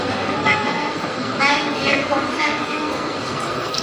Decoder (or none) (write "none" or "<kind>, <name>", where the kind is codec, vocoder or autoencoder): codec, SNAC